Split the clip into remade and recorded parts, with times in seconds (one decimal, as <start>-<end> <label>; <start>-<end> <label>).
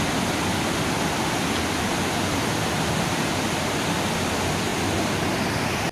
0.0-5.9 recorded